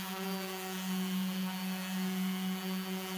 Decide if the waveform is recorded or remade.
remade